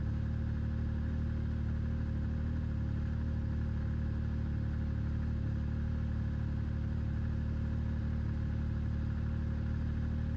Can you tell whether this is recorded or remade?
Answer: recorded